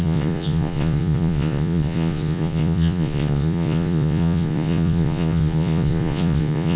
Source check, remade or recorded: remade